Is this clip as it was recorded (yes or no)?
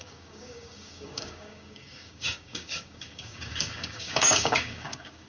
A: no